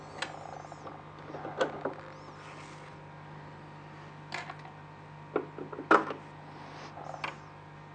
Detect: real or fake real